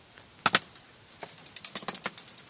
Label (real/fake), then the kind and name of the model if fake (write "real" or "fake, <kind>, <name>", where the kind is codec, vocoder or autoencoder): real